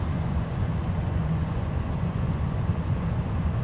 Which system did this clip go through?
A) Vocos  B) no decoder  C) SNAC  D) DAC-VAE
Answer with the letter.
A